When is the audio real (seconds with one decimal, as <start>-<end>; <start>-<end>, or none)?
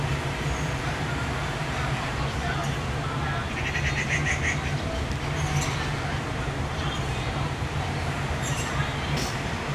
2.6-6.9